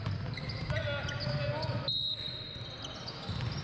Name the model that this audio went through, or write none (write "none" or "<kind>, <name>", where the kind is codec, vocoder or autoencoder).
none